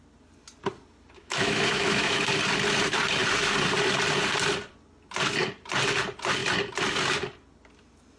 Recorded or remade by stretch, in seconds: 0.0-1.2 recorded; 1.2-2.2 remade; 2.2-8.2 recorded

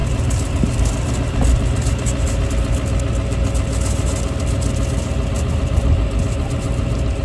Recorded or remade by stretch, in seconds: 0.0-7.2 recorded

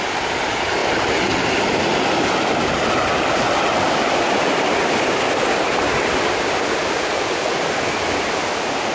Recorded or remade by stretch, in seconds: 0.0-0.8 recorded; 0.8-5.9 remade; 5.9-8.9 recorded

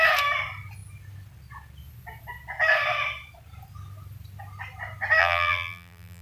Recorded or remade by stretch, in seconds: 0.0-5.2 recorded; 5.2-6.2 remade

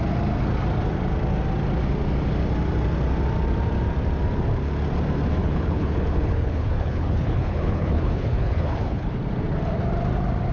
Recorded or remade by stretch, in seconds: 0.0-5.4 recorded; 5.4-9.2 remade; 9.2-10.5 recorded